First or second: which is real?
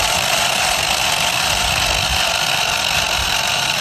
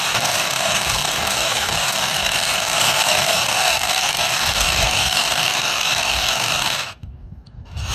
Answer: first